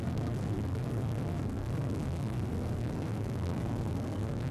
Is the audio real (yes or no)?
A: no